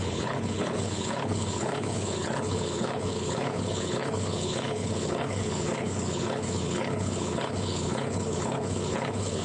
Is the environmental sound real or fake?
fake